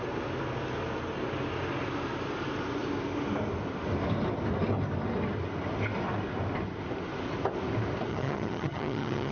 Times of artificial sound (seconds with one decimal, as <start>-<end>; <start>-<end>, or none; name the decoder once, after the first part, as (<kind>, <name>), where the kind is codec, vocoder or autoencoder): 8.1-9.3 (vocoder, HiFi-GAN)